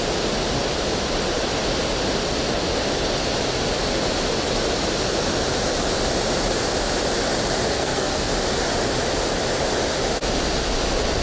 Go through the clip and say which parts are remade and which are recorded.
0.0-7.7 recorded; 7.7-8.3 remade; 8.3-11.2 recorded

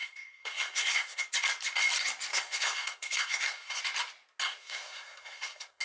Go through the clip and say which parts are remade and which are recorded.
0.0-1.2 remade; 1.2-2.3 recorded; 2.3-3.8 remade; 3.8-4.4 recorded; 4.4-5.8 remade

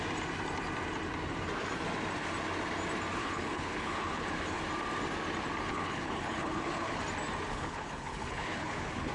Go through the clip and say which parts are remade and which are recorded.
0.0-3.2 recorded; 3.2-4.6 remade; 4.6-5.7 recorded; 5.7-7.0 remade; 7.0-7.5 recorded; 7.5-9.1 remade

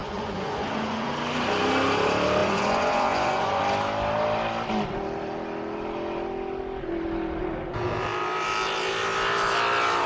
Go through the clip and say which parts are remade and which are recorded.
0.0-1.1 remade; 1.1-2.4 recorded; 2.4-3.6 remade; 3.6-10.1 recorded

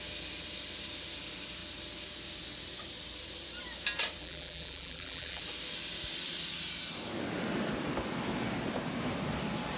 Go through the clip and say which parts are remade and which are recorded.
0.0-4.2 recorded; 4.2-5.4 remade; 5.4-9.8 recorded

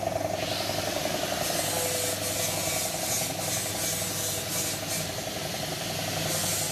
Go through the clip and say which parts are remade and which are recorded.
0.0-6.7 recorded

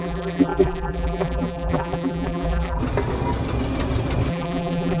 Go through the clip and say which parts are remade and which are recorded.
0.0-2.8 remade; 2.8-4.3 recorded; 4.3-5.0 remade

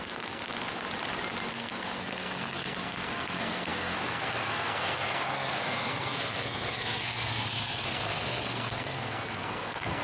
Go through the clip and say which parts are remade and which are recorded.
0.0-0.4 remade; 0.4-1.5 recorded; 1.5-10.0 remade